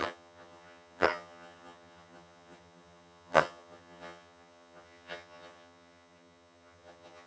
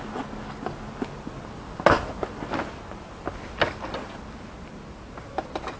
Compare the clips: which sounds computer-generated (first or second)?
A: first